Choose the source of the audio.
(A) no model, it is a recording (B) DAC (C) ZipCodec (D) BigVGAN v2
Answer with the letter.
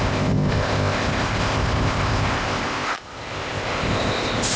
C